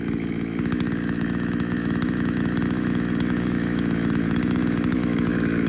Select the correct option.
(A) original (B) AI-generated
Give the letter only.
B